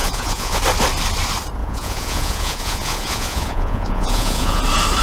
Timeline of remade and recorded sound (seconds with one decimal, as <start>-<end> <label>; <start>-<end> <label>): 0.0-0.6 remade; 0.6-1.6 recorded; 1.6-4.6 remade; 4.6-5.0 recorded